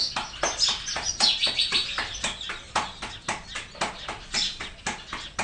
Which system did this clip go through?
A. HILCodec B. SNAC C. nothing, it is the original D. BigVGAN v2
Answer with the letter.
C